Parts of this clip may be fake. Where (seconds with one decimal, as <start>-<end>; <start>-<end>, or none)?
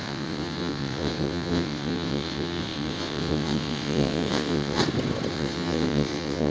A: 0.0-4.8; 5.3-6.5